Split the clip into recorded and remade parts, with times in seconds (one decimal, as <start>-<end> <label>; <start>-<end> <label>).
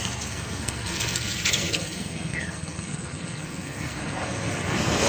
0.0-5.1 remade